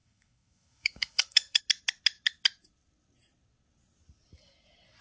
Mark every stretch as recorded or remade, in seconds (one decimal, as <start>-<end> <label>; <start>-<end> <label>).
0.0-1.6 remade; 1.6-5.0 recorded